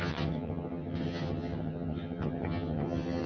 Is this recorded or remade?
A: remade